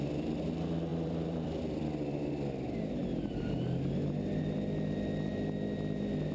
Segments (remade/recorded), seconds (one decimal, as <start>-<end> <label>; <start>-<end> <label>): 0.0-0.9 recorded; 0.9-2.3 remade; 2.3-6.3 recorded